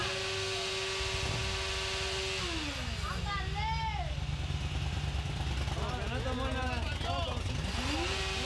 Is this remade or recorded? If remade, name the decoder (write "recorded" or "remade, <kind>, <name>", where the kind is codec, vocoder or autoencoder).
recorded